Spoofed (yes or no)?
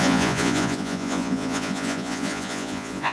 yes